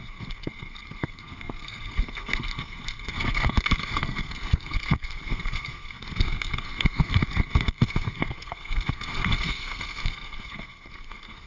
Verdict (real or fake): fake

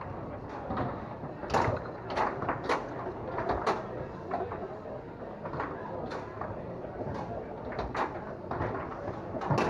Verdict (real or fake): real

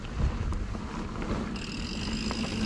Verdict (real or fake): real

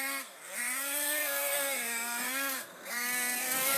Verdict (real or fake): fake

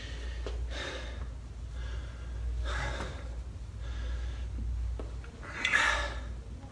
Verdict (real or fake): real